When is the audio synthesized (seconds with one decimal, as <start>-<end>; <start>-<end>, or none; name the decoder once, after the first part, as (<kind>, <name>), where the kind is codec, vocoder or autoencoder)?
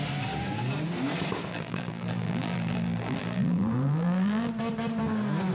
1.5-4.5 (vocoder, BigVGAN v2)